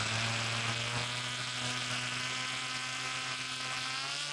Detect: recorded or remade recorded